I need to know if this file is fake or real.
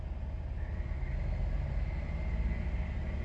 real